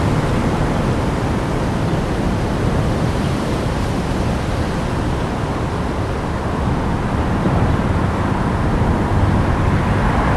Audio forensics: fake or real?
real